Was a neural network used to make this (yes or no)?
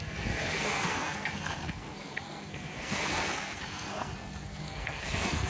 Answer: yes